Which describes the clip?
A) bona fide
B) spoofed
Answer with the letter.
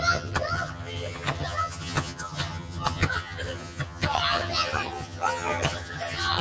B